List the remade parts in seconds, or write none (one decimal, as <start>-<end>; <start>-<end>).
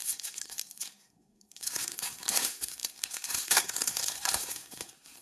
0.0-5.2